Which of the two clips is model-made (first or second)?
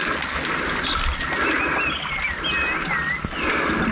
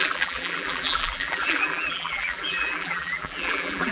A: second